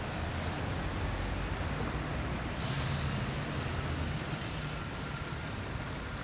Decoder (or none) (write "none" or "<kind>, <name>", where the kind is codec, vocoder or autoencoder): none